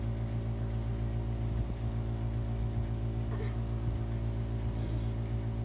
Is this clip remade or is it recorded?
recorded